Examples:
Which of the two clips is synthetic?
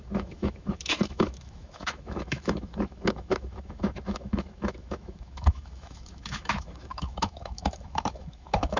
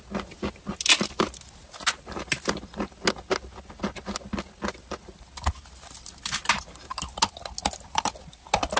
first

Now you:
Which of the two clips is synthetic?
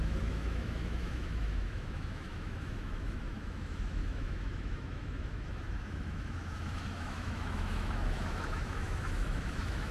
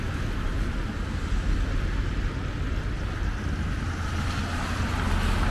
first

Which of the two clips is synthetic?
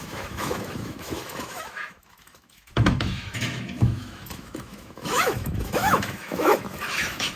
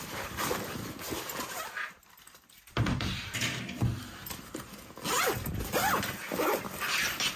first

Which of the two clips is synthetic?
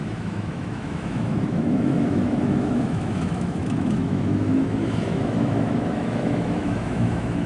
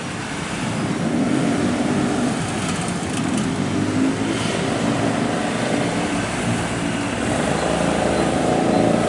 first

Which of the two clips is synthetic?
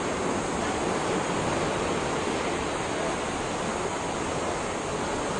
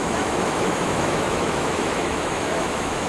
second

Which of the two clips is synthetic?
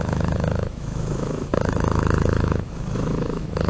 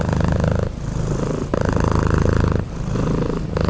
first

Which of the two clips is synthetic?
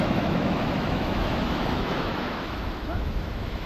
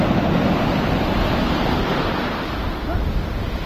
first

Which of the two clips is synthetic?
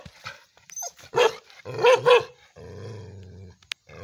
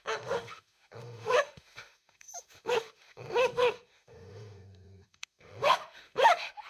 second